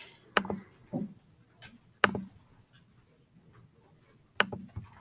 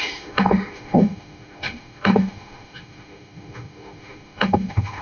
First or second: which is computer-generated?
second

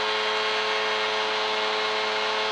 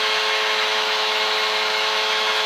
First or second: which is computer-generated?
second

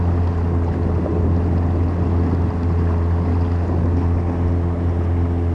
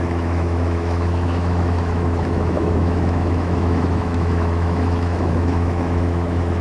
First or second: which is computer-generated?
second